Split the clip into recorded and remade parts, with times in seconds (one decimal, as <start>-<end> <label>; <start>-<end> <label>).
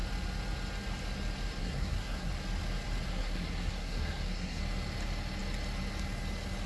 0.0-1.6 recorded; 1.6-2.3 remade; 2.3-3.1 recorded; 3.1-4.6 remade; 4.6-6.7 recorded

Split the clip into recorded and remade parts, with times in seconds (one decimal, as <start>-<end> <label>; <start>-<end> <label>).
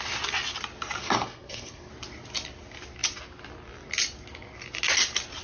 0.0-1.0 recorded; 1.0-1.9 remade; 1.9-5.4 recorded